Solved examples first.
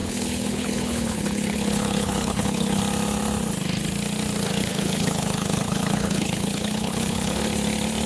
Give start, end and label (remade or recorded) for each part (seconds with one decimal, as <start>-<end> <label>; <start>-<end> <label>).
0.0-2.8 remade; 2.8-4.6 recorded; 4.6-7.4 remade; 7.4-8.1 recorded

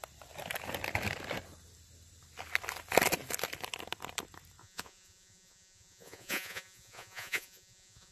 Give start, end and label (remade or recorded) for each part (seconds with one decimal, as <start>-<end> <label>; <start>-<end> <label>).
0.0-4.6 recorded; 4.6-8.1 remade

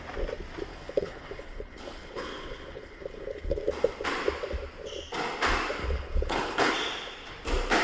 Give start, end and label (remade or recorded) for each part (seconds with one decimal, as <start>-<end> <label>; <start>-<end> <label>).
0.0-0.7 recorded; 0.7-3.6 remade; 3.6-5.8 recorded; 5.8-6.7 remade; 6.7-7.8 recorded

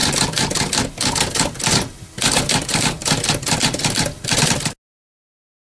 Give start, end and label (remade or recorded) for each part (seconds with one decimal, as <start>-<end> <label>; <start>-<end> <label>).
0.0-5.7 recorded

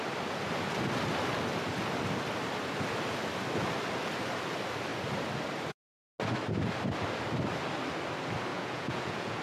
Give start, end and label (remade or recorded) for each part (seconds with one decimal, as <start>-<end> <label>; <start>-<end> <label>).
0.0-8.5 recorded; 8.5-9.4 remade

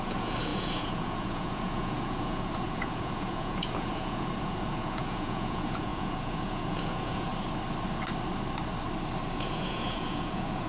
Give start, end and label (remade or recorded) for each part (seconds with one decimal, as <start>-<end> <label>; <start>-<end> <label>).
0.0-7.3 remade; 7.3-9.3 recorded; 9.3-10.7 remade

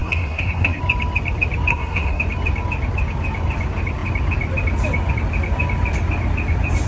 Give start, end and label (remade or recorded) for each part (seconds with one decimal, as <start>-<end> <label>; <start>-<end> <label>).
0.0-0.8 remade; 0.8-1.7 recorded; 1.7-2.2 remade; 2.2-6.9 recorded

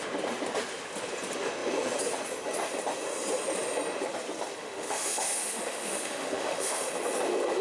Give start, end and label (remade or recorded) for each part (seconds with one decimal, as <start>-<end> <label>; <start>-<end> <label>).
0.0-4.6 recorded; 4.6-6.9 remade; 6.9-7.6 recorded